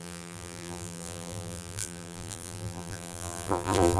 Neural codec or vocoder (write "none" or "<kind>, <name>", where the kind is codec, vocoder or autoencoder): vocoder, BigVGAN v2